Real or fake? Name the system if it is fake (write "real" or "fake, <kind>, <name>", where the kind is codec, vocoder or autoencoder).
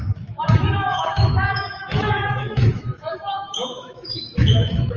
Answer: fake, autoencoder, DAC-VAE